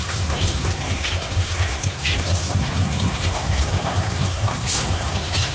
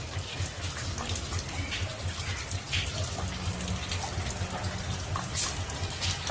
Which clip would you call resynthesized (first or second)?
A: first